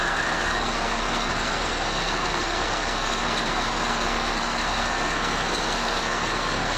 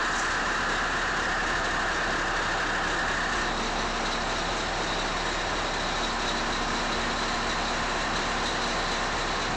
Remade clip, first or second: first